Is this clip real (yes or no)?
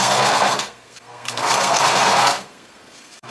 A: no